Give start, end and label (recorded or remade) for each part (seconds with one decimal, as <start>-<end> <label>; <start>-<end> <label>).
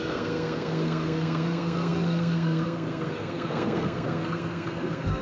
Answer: 0.0-5.2 remade